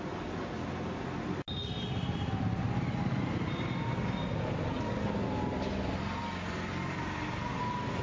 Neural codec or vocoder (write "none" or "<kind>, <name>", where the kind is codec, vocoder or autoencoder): none